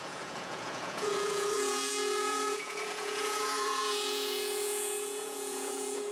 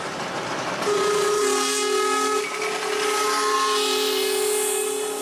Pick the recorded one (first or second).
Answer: second